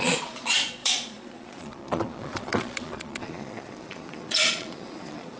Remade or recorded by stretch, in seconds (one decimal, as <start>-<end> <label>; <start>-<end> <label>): 0.0-5.4 remade